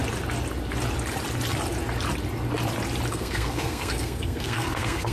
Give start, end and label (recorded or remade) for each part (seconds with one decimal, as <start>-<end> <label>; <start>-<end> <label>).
0.0-3.1 recorded; 3.1-5.1 remade

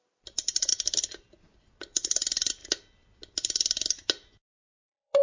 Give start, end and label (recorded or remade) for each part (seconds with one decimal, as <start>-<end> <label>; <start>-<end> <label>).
0.0-0.7 remade; 0.7-1.8 recorded; 1.8-2.6 remade; 2.6-4.8 recorded; 4.8-5.2 remade